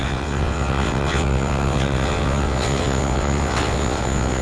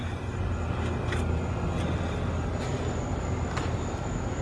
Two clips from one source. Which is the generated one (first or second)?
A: first